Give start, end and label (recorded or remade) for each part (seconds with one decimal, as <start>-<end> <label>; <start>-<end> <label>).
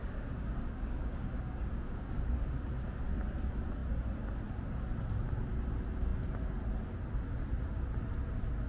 0.0-2.1 remade; 2.1-8.7 recorded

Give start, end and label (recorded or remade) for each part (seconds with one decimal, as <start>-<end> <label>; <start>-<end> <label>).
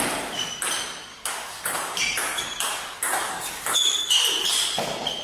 0.0-1.1 recorded; 1.1-4.2 remade; 4.2-5.2 recorded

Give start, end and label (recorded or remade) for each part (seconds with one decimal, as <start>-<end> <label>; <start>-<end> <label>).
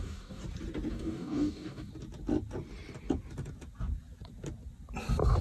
0.0-0.4 remade; 0.4-0.9 recorded; 0.9-1.9 remade; 1.9-5.4 recorded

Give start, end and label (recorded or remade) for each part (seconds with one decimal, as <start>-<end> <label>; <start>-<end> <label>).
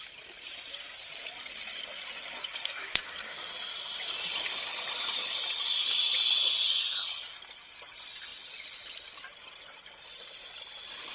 0.0-2.5 recorded; 2.5-3.5 remade; 3.5-11.1 recorded